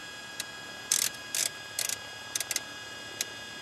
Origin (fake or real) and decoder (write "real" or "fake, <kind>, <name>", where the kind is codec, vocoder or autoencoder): real